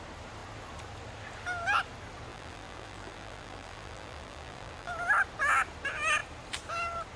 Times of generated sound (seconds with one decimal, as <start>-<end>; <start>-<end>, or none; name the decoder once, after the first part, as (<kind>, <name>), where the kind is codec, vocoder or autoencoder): 2.3-4.9 (vocoder, BigVGAN v2)